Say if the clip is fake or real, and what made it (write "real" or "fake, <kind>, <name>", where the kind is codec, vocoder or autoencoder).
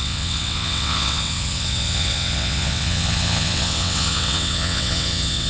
fake, vocoder, WaveNeXt